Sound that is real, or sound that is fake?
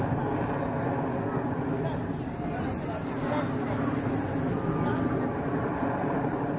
real